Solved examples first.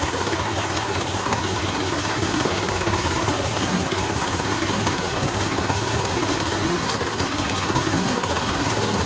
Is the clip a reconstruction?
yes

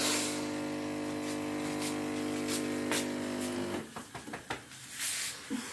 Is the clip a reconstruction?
no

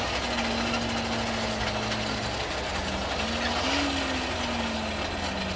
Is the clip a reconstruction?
no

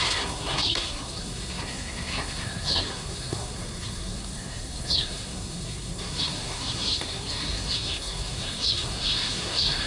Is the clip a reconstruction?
yes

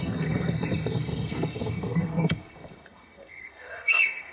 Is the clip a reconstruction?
yes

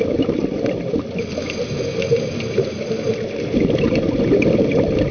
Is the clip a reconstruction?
no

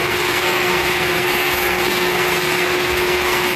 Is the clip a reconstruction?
yes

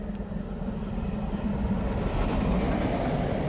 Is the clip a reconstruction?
no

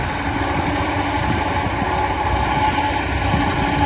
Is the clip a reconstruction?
no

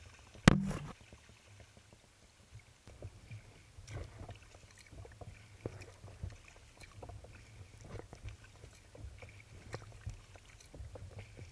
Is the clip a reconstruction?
no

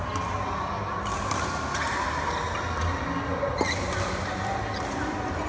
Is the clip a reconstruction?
no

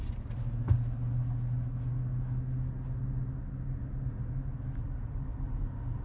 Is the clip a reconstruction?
no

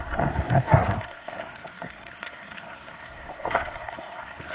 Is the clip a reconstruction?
yes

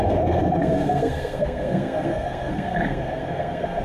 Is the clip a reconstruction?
yes